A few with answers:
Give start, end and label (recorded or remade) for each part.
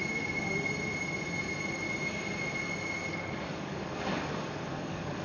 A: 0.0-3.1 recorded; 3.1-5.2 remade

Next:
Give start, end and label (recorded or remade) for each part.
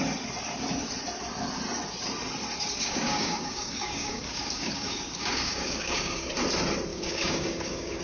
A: 0.0-2.8 recorded; 2.8-6.3 remade; 6.3-6.9 recorded; 6.9-8.0 remade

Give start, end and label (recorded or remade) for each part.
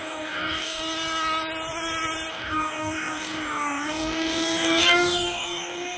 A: 0.0-0.8 remade; 0.8-2.3 recorded; 2.3-6.0 remade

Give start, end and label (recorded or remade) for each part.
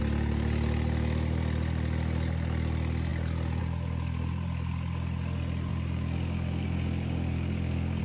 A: 0.0-5.7 recorded; 5.7-8.0 remade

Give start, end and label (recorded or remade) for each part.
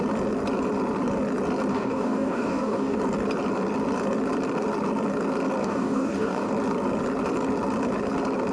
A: 0.0-1.7 recorded; 1.7-3.0 remade; 3.0-5.6 recorded; 5.6-6.5 remade; 6.5-8.5 recorded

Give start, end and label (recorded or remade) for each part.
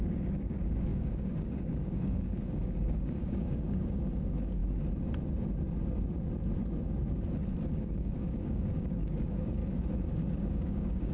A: 0.0-4.6 remade; 4.6-7.7 recorded; 7.7-9.6 remade; 9.6-10.2 recorded; 10.2-11.1 remade